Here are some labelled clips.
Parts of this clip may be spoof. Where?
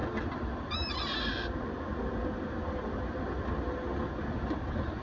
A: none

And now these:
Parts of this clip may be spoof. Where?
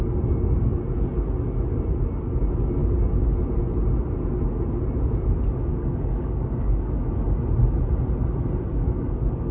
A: 5.7-7.2 (codec, DAC); 8.7-9.5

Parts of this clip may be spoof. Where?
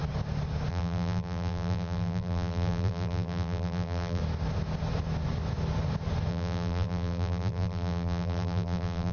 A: 0.7-4.2 (vocoder, BigVGAN v2); 6.3-9.1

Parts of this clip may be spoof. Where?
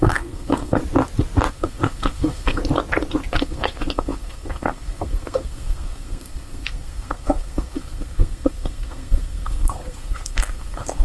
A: 0.0-0.8 (codec, SNAC); 1.5-2.6; 3.3-11.0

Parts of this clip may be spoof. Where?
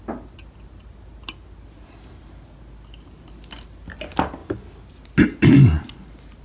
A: none